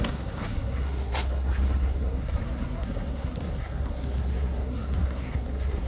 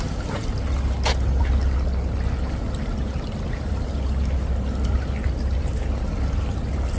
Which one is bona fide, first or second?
second